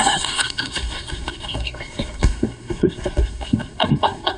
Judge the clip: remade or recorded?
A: remade